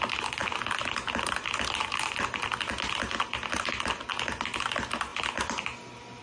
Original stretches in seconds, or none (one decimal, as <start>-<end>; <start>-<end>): 0.0-6.2